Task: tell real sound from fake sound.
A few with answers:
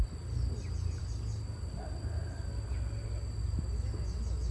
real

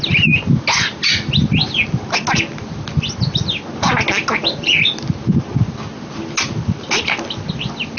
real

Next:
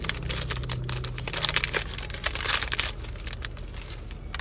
real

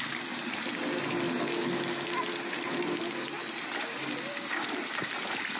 real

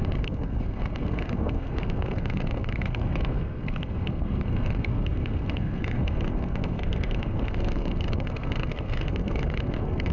fake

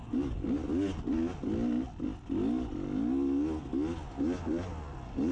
real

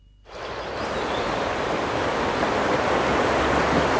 fake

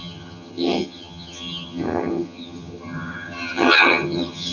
fake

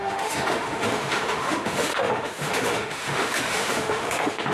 fake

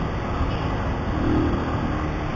real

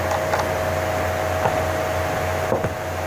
real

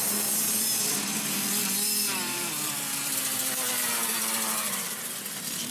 fake